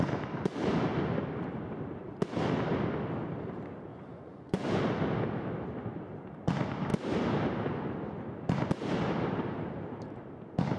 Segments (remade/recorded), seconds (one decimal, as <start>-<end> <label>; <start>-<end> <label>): 0.0-3.9 recorded; 3.9-4.8 remade; 4.8-10.8 recorded